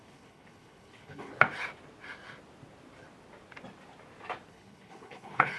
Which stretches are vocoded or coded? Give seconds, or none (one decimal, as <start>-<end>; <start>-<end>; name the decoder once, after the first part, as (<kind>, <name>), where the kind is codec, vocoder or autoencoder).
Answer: 0.0-1.3 (codec, HILCodec); 4.5-5.6